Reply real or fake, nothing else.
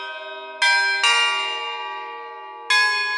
real